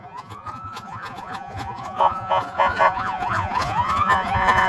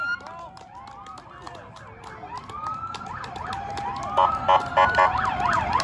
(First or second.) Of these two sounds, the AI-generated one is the first